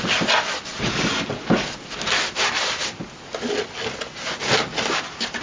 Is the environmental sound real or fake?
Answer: real